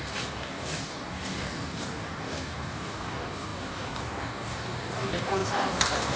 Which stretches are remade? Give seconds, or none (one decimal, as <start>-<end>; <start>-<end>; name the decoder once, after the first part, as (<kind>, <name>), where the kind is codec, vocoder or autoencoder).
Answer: 0.0-6.2 (codec, DAC)